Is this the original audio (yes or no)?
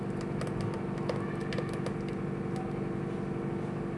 yes